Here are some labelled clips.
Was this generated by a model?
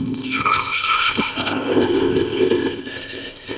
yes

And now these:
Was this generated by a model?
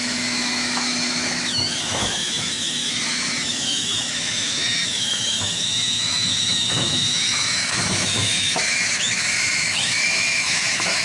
yes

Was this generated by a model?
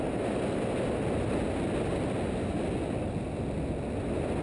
no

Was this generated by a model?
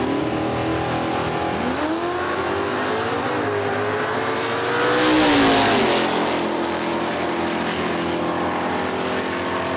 no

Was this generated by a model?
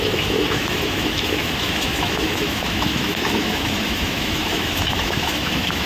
yes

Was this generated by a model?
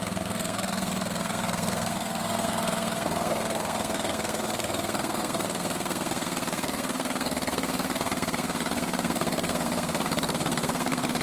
yes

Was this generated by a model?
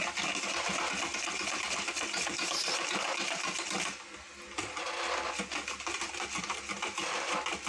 no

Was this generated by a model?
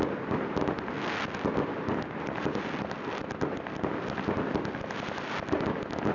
no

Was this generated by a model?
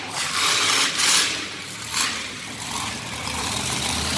yes